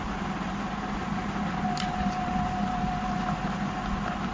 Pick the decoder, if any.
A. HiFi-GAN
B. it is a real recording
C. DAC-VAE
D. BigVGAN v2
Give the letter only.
B